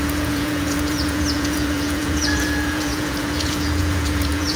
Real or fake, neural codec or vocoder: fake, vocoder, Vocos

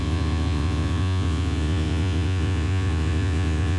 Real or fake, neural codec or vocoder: fake, vocoder, Vocos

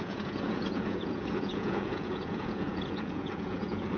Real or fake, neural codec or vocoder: fake, vocoder, Vocos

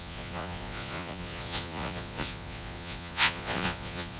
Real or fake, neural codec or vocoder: fake, vocoder, Vocos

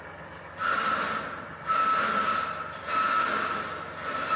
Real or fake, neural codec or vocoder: real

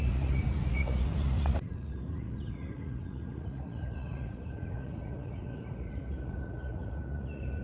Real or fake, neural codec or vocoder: fake, vocoder, Vocos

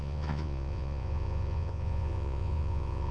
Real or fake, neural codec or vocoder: fake, vocoder, Vocos